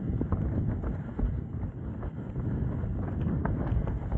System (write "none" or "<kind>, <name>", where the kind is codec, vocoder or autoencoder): none